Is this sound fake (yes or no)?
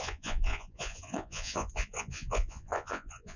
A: yes